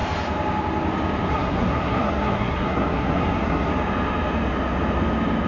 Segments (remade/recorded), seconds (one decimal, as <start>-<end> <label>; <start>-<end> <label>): 0.0-1.3 recorded; 1.3-3.7 remade; 3.7-5.5 recorded